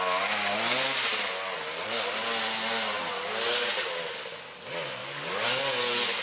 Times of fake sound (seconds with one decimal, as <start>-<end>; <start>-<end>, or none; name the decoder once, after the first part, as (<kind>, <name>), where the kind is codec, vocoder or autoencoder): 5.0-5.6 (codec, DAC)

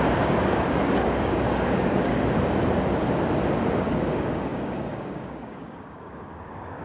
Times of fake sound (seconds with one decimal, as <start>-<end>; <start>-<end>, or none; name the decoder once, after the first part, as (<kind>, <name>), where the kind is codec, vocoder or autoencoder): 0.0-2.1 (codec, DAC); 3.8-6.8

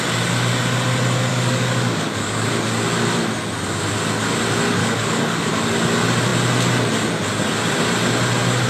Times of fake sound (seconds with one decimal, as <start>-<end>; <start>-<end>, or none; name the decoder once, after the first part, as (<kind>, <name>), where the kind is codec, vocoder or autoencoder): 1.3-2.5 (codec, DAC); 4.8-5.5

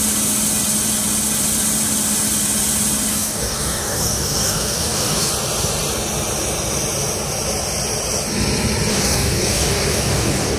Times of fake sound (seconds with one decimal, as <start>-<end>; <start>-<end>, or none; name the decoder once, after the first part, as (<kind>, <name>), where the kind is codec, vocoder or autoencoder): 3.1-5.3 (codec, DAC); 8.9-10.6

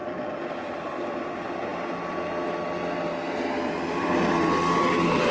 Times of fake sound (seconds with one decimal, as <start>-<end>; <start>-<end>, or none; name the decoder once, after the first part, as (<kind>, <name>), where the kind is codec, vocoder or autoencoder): none

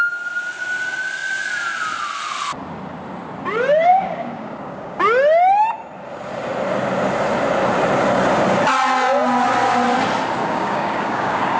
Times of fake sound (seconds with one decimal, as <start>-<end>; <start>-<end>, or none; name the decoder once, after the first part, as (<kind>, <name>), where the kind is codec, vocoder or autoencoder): 3.9-5.0 (codec, DAC); 10.4-11.6